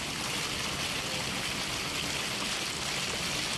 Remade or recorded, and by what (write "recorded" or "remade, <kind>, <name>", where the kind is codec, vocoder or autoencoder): recorded